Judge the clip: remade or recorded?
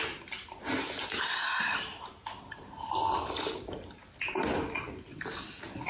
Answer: recorded